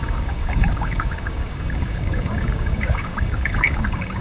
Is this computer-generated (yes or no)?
yes